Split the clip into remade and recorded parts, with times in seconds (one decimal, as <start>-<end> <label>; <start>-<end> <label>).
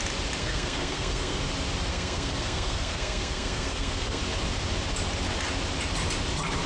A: 0.0-0.4 recorded; 0.4-1.4 remade; 1.4-1.9 recorded; 1.9-4.2 remade; 4.2-6.7 recorded